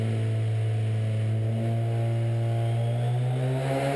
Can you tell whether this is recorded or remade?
recorded